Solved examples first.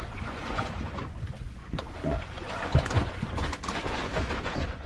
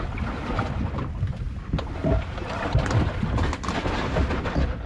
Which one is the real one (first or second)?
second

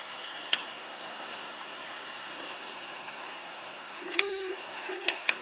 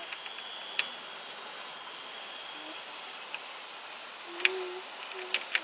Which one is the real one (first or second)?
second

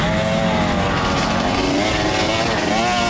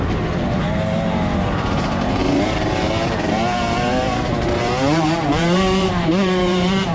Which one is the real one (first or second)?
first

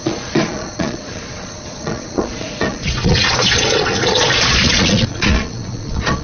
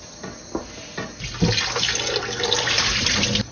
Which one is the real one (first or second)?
second